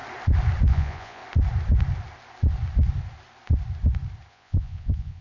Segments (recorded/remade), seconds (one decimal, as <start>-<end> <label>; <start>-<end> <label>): 0.0-0.7 recorded; 0.7-1.2 remade; 1.2-4.3 recorded; 4.3-5.2 remade